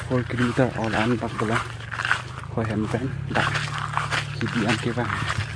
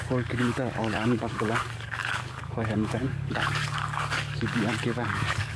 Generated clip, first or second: second